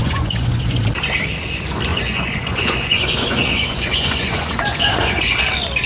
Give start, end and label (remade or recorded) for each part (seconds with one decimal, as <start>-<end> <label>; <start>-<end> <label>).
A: 0.0-0.8 remade; 0.8-1.9 recorded; 1.9-5.4 remade; 5.4-5.9 recorded